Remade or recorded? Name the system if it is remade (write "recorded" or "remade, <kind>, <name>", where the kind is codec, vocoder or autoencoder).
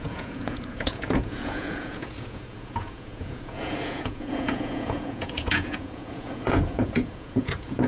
remade, vocoder, Vocos